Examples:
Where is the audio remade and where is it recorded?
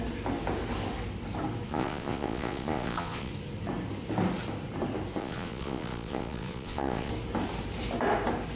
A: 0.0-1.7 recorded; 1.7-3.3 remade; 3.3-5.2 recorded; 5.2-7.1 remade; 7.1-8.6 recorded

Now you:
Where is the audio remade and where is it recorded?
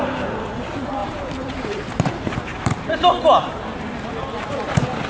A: 0.0-1.0 recorded; 1.0-2.1 remade; 2.1-2.5 recorded; 2.5-3.0 remade; 3.0-5.1 recorded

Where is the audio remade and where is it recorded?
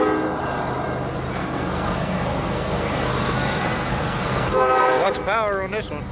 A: 0.0-1.4 recorded; 1.4-5.1 remade; 5.1-6.1 recorded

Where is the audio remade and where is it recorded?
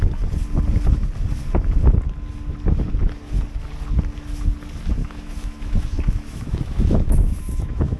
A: 0.0-5.0 recorded; 5.0-8.0 remade